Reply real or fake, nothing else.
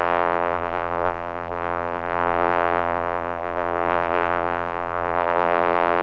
fake